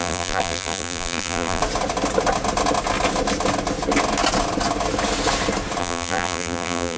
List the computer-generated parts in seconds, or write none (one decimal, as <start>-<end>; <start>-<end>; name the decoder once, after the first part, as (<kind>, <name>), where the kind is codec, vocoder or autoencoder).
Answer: 0.0-1.6 (vocoder, BigVGAN v2); 5.8-7.0